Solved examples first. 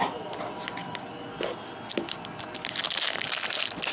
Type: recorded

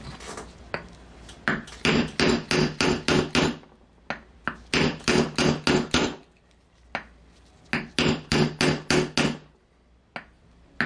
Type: recorded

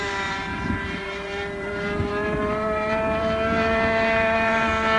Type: remade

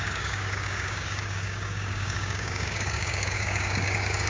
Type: remade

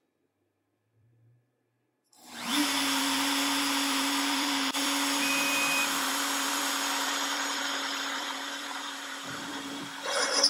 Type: remade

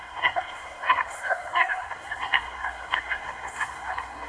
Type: remade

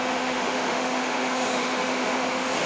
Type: remade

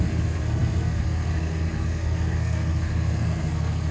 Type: remade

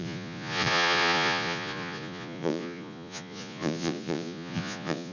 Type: remade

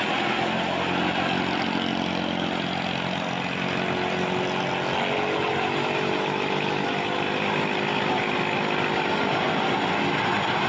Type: recorded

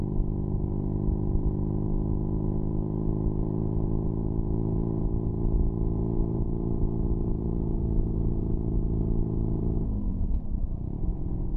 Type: remade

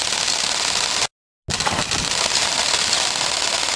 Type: recorded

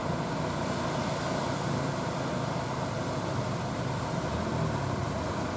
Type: recorded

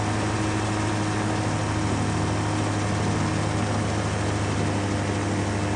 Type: recorded